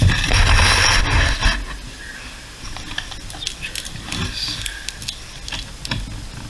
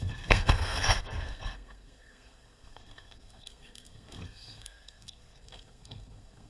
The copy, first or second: second